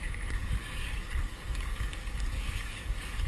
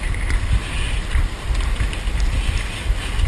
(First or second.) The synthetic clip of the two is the first